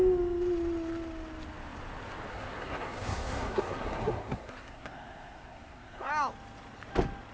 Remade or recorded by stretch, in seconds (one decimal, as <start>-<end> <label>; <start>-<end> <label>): 0.0-2.3 recorded; 2.3-6.1 remade; 6.1-7.3 recorded